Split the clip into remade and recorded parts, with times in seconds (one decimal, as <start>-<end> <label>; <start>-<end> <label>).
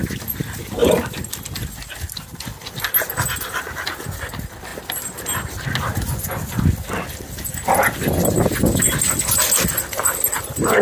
0.0-10.8 recorded